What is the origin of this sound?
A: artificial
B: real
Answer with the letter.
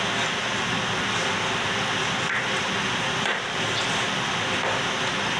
B